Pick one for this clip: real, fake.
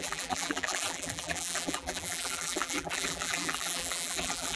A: fake